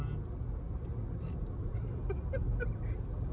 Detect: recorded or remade recorded